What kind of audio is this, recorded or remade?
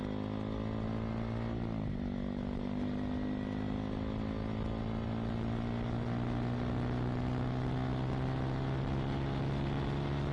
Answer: recorded